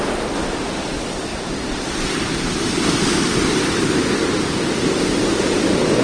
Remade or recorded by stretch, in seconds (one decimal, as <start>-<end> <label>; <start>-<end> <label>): 0.0-6.0 recorded